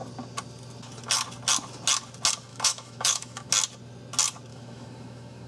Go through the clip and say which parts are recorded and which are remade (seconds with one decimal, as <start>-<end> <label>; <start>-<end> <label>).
0.0-2.5 recorded; 2.5-3.5 remade; 3.5-4.5 recorded; 4.5-5.5 remade